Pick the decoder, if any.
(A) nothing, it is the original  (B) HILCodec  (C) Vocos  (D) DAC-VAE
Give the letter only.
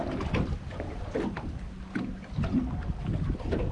A